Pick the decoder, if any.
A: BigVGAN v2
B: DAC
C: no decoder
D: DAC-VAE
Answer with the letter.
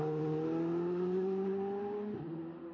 C